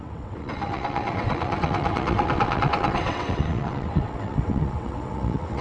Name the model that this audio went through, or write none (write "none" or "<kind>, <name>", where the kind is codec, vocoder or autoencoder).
vocoder, WaveNeXt